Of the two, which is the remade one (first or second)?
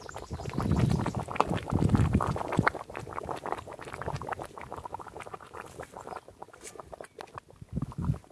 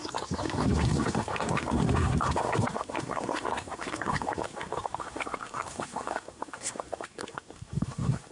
second